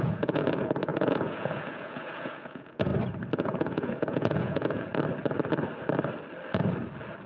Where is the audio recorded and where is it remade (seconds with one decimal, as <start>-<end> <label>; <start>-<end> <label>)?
0.0-2.9 remade; 2.9-3.4 recorded; 3.4-4.9 remade; 4.9-7.3 recorded